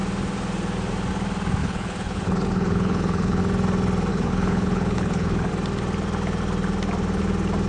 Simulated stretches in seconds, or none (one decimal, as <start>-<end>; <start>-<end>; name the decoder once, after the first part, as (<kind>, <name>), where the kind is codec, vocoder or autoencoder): 1.6-3.4 (codec, HILCodec); 4.1-5.5